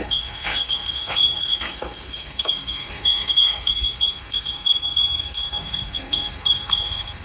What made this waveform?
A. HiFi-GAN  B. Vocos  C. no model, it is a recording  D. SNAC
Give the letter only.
D